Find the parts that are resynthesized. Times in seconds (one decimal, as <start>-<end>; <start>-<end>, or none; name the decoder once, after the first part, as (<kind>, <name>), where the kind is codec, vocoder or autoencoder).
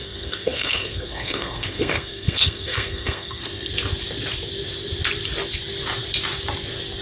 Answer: 0.0-3.7 (codec, SNAC)